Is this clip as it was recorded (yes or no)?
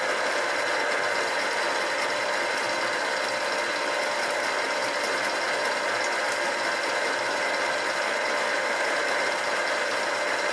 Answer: yes